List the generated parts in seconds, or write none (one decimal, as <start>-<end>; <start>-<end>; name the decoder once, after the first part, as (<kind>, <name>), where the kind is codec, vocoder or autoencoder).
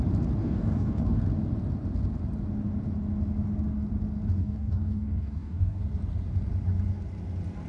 0.4-1.2 (codec, DAC); 4.4-5.8